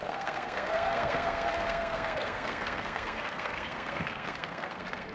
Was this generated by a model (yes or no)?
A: yes